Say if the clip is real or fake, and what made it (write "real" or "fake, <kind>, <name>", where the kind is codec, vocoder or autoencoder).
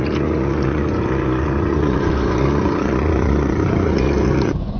fake, vocoder, Vocos